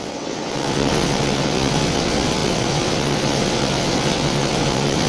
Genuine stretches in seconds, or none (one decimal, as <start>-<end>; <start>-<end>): none